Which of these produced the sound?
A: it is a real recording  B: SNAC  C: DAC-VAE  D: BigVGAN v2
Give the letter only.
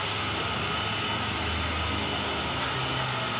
A